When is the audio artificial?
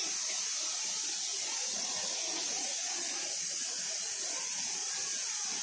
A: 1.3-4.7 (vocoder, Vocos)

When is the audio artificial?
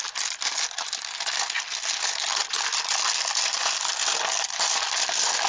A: none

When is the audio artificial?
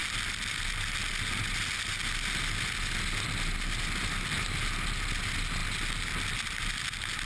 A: none